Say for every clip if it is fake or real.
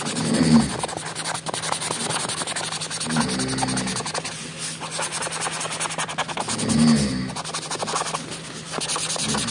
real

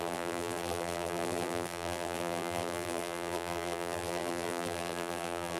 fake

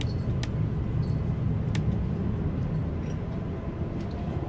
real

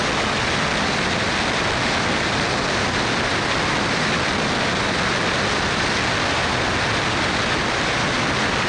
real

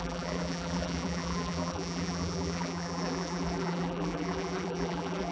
fake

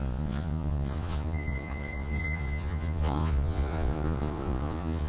fake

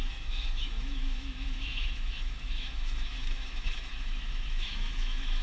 fake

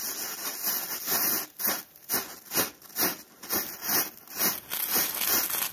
real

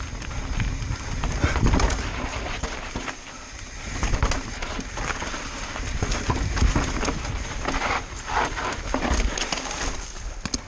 real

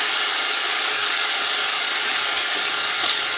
fake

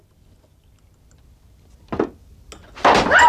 real